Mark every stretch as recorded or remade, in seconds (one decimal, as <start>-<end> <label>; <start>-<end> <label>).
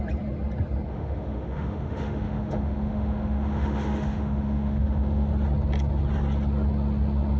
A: 0.0-0.9 recorded; 0.9-5.3 remade; 5.3-7.4 recorded